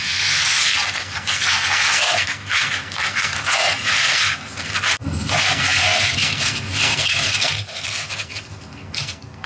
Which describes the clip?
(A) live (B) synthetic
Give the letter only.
B